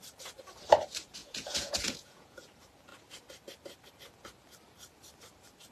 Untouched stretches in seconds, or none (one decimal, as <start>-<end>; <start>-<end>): 0.0-1.2; 2.5-5.7